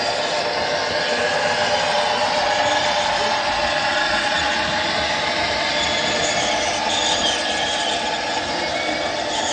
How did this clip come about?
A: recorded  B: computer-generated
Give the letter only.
A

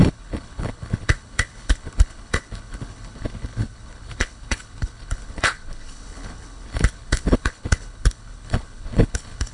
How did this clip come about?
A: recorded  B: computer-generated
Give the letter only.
B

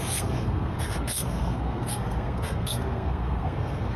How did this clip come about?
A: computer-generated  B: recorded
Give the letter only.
A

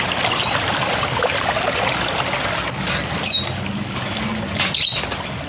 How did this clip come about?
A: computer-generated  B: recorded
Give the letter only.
B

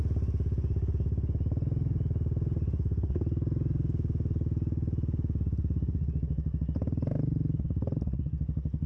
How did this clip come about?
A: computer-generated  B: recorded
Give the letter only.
B